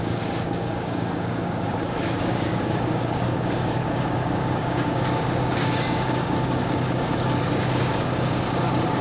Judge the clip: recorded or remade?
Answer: remade